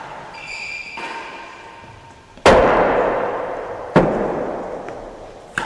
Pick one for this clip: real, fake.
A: real